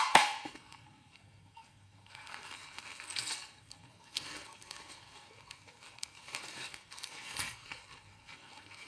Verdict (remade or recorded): remade